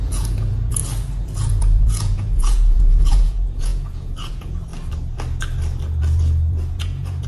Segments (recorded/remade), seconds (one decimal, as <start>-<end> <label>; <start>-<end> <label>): 0.0-0.8 remade; 0.8-1.4 recorded; 1.4-4.7 remade; 4.7-6.8 recorded; 6.8-7.3 remade